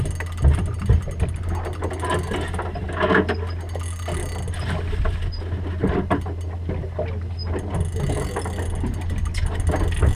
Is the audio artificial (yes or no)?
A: no